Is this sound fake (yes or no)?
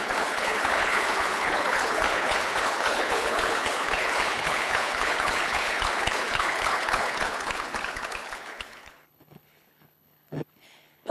yes